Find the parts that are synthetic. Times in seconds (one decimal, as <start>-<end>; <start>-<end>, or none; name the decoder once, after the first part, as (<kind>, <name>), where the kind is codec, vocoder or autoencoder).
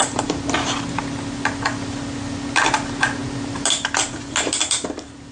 none